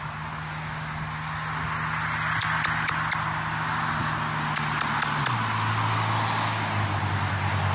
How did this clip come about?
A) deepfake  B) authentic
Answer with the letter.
B